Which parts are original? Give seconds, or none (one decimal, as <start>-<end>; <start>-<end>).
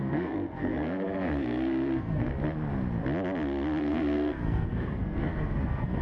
2.3-3.8